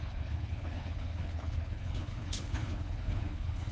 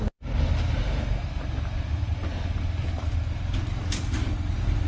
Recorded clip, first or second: second